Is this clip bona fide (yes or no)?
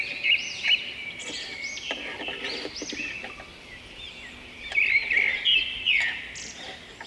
no